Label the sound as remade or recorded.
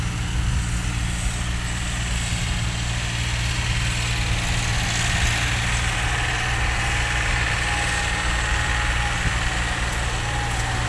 recorded